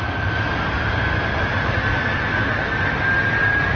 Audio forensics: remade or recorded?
recorded